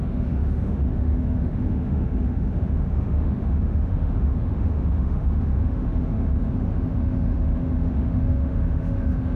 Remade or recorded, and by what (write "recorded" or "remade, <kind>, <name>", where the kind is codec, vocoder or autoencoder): remade, autoencoder, DAC-VAE